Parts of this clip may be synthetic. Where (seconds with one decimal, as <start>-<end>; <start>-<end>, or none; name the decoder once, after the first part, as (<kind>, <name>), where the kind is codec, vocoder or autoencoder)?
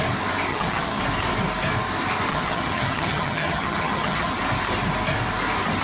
0.5-1.0 (vocoder, HiFi-GAN); 2.3-4.3